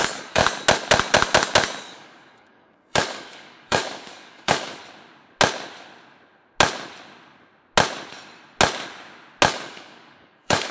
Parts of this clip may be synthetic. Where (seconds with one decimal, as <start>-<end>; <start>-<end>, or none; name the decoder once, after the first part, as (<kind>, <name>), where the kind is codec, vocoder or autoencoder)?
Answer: 0.0-0.4 (codec, DAC); 1.8-4.8; 9.5-10.7